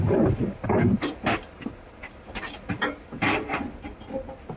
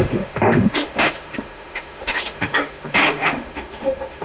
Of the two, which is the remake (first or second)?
second